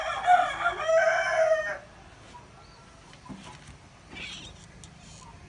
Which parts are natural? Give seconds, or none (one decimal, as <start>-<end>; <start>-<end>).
0.0-5.5